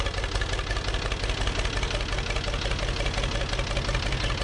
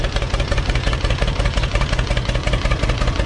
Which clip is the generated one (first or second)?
second